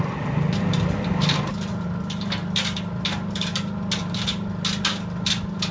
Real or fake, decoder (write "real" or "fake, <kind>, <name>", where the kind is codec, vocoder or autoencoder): real